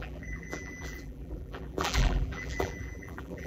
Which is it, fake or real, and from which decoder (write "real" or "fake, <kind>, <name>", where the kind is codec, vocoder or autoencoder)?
fake, vocoder, BigVGAN v2